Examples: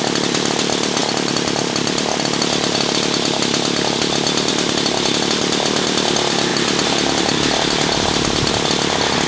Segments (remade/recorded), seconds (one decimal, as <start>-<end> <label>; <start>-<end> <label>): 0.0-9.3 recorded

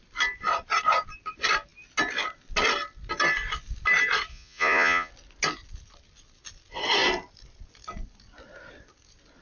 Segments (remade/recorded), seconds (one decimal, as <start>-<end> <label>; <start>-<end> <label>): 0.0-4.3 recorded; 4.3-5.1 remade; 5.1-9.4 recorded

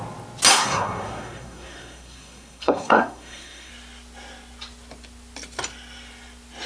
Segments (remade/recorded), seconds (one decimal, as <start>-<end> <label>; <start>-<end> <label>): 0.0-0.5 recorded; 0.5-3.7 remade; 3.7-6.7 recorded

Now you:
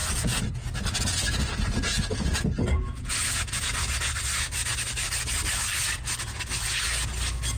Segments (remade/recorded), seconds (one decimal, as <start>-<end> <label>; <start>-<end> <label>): 0.0-4.1 remade; 4.1-7.6 recorded

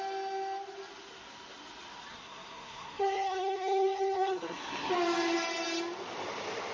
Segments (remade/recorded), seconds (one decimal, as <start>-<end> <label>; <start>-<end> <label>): 0.0-2.1 recorded; 2.1-4.9 remade; 4.9-6.7 recorded

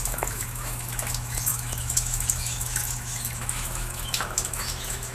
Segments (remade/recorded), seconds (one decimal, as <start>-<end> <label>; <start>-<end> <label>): 0.0-5.1 remade

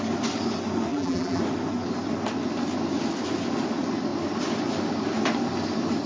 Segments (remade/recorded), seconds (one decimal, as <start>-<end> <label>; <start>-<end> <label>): 0.0-0.9 recorded; 0.9-1.4 remade; 1.4-6.1 recorded

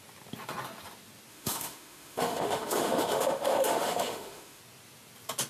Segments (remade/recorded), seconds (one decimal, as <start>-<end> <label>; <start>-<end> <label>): 0.0-1.3 recorded; 1.3-4.6 remade; 4.6-5.5 recorded